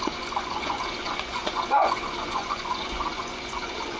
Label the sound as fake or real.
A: fake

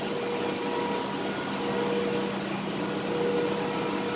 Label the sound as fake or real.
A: real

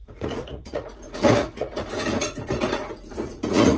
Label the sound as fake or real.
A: fake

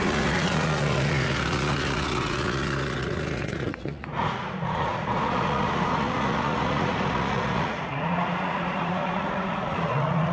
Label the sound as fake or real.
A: fake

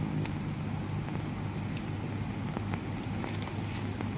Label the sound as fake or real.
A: real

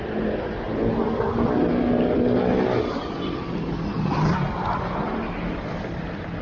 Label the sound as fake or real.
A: real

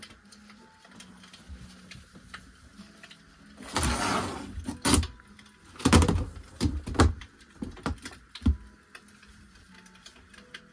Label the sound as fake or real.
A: real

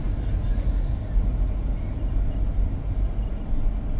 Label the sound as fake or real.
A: real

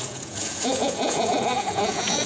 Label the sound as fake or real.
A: fake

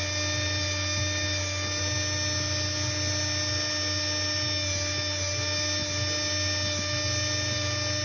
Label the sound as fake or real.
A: real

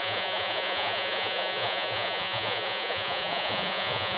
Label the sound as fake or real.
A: fake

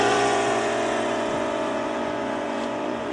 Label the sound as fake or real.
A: fake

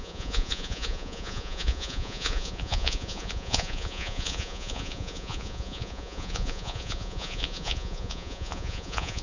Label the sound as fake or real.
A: fake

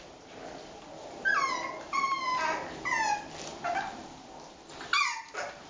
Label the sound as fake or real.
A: real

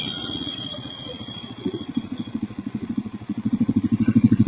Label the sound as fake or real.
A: fake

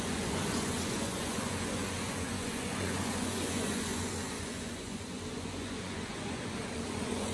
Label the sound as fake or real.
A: fake